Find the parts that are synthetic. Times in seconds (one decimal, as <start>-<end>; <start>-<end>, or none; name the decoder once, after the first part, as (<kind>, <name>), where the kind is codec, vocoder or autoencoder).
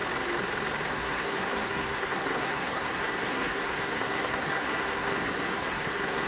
0.9-6.3 (codec, SNAC)